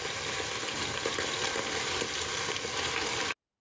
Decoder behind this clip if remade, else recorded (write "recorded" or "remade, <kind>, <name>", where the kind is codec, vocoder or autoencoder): recorded